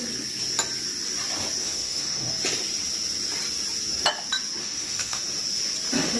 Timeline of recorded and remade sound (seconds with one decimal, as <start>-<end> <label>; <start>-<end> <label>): 0.0-1.6 recorded; 1.6-2.3 remade; 2.3-4.6 recorded; 4.6-5.2 remade; 5.2-6.2 recorded